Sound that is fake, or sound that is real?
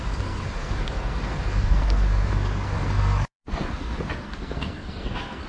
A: fake